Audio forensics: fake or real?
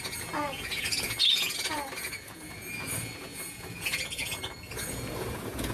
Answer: fake